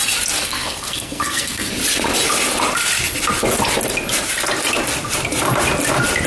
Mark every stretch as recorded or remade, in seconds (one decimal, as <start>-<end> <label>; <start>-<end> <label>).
0.0-0.4 recorded; 0.4-1.7 remade; 1.7-6.3 recorded